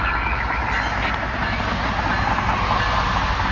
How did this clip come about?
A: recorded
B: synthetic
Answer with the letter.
A